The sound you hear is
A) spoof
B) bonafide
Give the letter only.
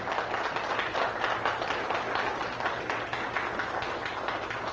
B